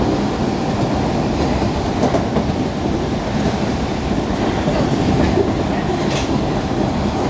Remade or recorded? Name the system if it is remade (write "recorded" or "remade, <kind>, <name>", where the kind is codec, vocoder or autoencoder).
recorded